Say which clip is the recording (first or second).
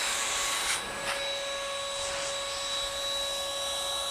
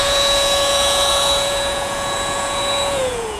first